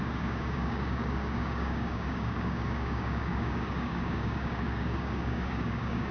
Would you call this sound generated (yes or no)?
yes